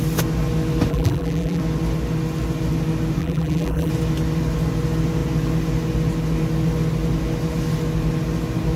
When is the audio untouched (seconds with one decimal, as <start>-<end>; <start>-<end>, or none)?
0.0-0.9; 1.6-3.2; 3.9-8.8